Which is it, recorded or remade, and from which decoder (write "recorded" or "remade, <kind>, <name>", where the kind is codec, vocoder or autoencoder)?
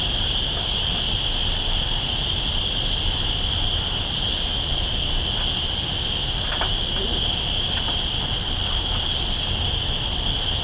recorded